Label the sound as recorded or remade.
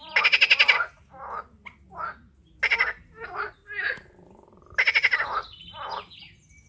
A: recorded